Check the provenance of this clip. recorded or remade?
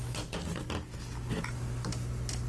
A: recorded